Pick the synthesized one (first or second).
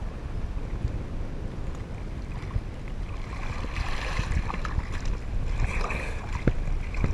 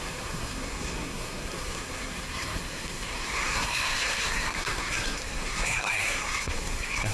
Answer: second